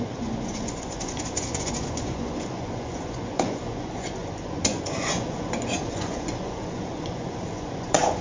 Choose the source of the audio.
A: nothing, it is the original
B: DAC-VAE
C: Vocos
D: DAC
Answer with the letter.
C